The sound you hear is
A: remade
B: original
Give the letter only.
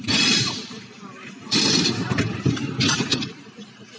A